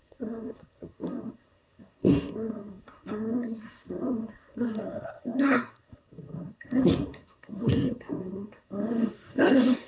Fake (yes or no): yes